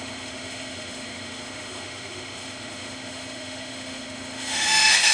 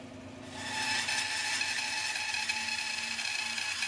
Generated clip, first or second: first